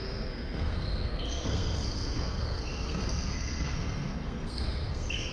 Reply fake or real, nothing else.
fake